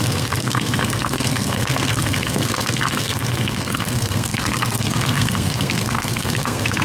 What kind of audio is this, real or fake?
fake